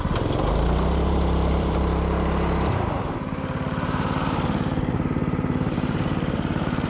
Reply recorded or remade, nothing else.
remade